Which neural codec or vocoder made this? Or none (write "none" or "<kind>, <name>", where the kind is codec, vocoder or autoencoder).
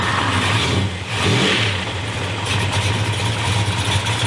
none